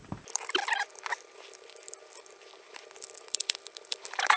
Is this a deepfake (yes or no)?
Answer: yes